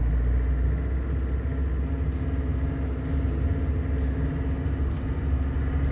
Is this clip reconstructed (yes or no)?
no